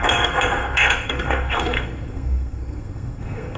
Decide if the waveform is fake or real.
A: fake